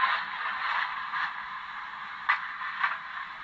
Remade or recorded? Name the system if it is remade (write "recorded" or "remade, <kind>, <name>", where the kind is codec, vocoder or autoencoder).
recorded